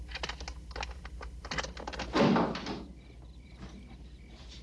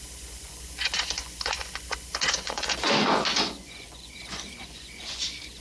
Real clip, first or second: first